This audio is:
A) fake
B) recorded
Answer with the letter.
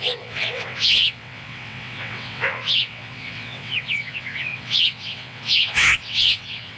A